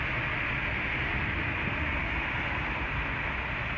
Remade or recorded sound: recorded